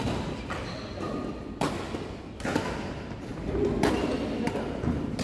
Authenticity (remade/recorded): recorded